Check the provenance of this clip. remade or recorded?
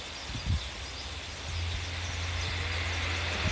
recorded